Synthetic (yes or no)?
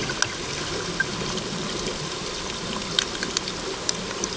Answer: no